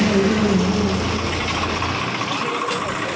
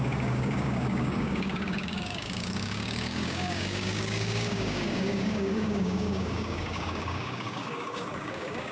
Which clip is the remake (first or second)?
second